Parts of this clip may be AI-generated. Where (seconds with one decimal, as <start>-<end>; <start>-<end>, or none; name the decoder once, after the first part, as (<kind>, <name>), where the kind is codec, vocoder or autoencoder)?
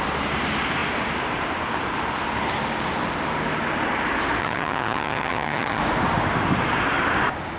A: 4.4-5.8 (vocoder, HiFi-GAN)